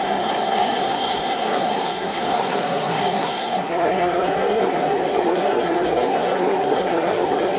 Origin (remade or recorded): remade